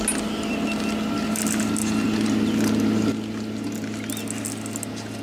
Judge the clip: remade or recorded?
recorded